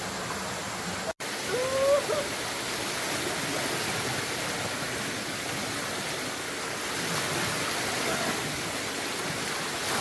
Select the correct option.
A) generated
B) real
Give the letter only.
B